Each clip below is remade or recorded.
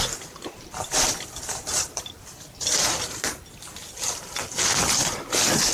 recorded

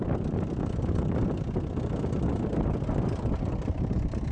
recorded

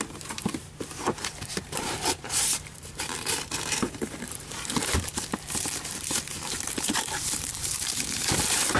remade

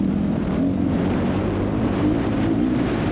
remade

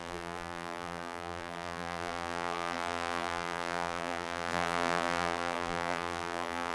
remade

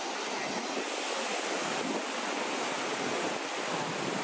recorded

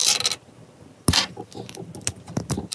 remade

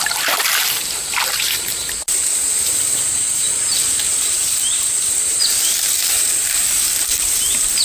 remade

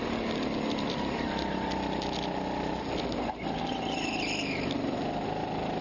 recorded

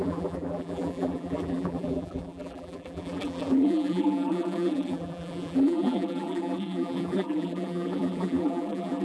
remade